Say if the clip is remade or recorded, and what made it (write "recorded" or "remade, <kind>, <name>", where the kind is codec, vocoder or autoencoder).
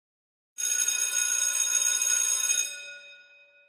recorded